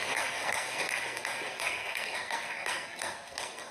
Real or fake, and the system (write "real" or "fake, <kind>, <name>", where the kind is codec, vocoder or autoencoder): fake, codec, SNAC